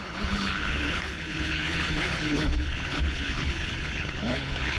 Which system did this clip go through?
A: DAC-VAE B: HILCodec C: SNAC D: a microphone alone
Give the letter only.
B